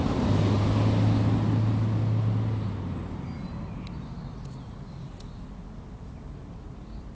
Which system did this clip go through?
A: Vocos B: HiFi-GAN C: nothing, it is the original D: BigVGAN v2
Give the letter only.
C